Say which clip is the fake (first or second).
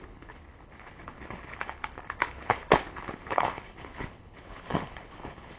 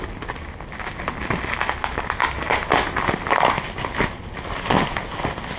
first